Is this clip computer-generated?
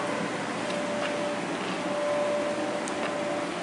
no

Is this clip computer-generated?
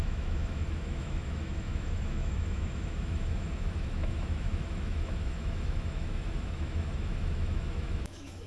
yes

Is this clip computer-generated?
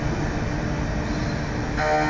no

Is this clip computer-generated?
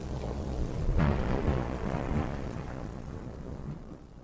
yes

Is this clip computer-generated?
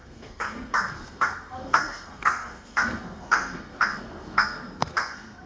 yes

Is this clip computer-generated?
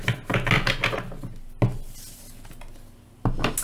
no